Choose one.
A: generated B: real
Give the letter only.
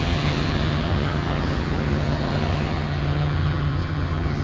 A